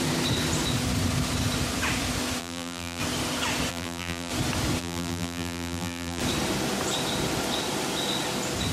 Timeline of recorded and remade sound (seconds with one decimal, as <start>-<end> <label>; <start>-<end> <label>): 0.0-2.4 recorded; 2.4-3.0 remade; 3.0-3.7 recorded; 3.7-4.3 remade; 4.3-4.8 recorded; 4.8-6.2 remade; 6.2-8.7 recorded